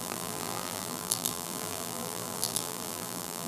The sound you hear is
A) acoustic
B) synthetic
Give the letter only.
B